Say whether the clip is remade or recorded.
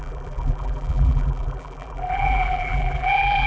remade